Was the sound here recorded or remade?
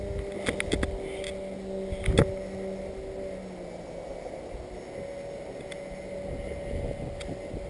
recorded